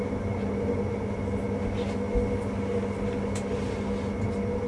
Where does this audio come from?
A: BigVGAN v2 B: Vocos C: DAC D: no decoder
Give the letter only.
D